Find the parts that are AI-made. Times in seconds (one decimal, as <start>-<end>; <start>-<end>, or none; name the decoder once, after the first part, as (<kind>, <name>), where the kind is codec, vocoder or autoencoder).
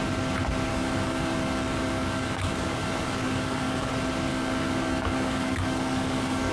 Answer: 0.7-3.9 (codec, DAC); 4.3-6.5